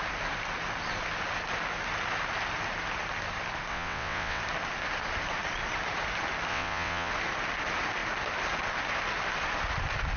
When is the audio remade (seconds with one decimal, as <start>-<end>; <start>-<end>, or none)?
3.7-4.4; 6.5-7.1